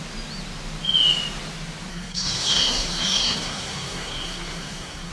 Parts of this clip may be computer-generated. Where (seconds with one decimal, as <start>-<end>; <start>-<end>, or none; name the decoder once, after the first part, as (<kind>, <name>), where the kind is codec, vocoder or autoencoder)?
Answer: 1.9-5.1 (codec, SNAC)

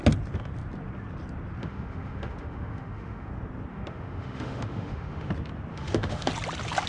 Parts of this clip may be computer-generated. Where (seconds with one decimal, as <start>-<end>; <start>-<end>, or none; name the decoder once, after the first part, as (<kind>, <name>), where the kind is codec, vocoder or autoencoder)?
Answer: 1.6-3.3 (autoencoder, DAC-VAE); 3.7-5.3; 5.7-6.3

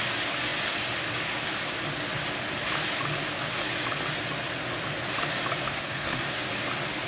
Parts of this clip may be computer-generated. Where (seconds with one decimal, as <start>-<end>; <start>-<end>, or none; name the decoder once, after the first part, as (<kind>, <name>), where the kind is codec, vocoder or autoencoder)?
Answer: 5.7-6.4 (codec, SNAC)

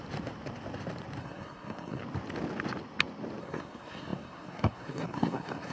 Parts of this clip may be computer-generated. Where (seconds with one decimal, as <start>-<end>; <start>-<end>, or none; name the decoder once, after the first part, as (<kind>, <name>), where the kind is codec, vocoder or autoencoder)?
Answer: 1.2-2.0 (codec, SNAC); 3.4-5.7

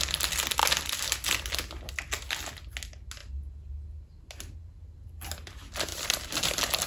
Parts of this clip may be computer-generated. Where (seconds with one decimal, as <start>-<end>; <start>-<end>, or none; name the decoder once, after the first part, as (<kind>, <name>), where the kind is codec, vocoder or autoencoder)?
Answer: 5.9-6.5 (vocoder, BigVGAN v2)

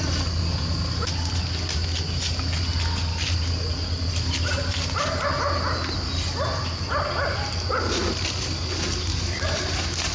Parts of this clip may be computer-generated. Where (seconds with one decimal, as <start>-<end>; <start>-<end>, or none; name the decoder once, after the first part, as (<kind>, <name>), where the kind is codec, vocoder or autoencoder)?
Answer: none

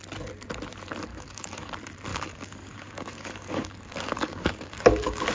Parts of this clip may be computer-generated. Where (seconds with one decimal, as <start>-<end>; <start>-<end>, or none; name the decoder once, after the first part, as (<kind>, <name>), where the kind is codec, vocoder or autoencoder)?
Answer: 1.1-1.7 (codec, DAC); 2.1-5.3